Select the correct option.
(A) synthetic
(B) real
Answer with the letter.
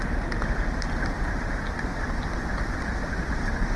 B